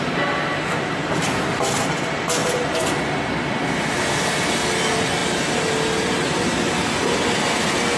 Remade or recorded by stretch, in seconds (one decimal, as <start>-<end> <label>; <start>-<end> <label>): 0.0-2.4 recorded; 2.4-3.3 remade; 3.3-8.0 recorded